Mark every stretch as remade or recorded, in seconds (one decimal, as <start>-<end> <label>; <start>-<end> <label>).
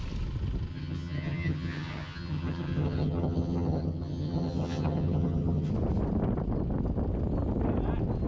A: 0.0-0.7 recorded; 0.7-5.7 remade; 5.7-8.3 recorded